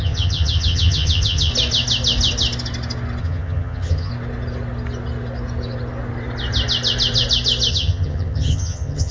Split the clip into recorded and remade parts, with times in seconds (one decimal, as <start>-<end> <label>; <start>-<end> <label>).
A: 0.0-1.5 remade; 1.5-3.2 recorded; 3.2-4.1 remade; 4.1-7.7 recorded; 7.7-9.1 remade